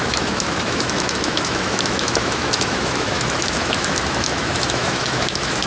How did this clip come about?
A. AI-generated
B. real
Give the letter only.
A